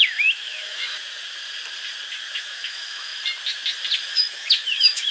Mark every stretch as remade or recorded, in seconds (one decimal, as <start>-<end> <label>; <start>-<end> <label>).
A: 0.0-0.9 remade; 0.9-2.3 recorded; 2.3-3.1 remade; 3.1-4.1 recorded; 4.1-5.1 remade